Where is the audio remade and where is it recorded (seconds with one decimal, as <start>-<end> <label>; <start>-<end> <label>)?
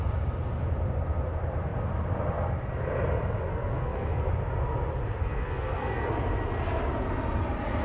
0.0-3.5 recorded; 3.5-4.3 remade; 4.3-5.2 recorded; 5.2-6.1 remade; 6.1-7.8 recorded